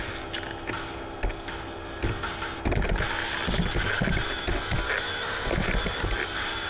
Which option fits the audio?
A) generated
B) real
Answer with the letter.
B